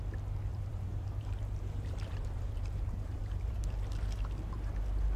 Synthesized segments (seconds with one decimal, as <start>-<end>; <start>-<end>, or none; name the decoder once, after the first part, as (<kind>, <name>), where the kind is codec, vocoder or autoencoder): 0.5-3.6 (vocoder, BigVGAN v2)